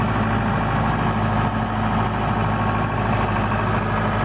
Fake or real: real